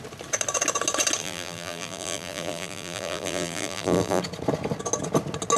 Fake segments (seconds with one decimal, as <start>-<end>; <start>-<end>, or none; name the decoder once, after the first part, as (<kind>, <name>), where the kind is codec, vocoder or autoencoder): 1.2-4.2 (vocoder, BigVGAN v2)

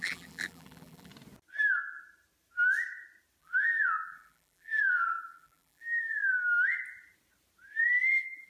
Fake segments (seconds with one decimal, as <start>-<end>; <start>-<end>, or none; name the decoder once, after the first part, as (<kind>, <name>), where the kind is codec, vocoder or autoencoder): 0.0-1.1 (vocoder, BigVGAN v2); 3.4-6.2; 8.1-8.5